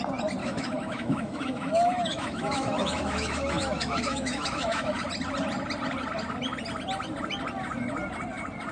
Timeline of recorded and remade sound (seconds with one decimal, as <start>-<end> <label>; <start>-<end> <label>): 0.0-0.4 recorded; 0.4-5.0 remade; 5.0-8.7 recorded